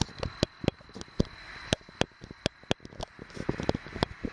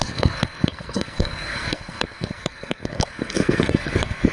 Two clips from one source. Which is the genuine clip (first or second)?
first